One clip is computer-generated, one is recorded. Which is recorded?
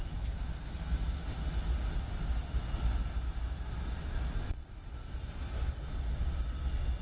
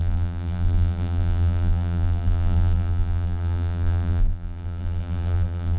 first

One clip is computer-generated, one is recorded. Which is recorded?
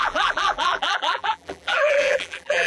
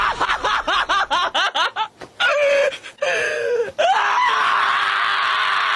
second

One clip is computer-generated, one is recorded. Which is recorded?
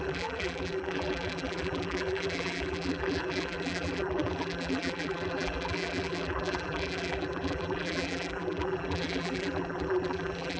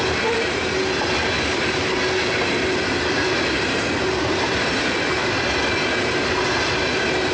second